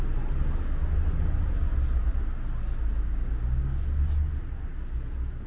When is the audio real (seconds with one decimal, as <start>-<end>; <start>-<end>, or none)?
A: 0.0-2.9; 3.8-5.5